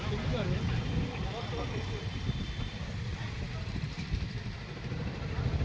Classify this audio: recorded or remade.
remade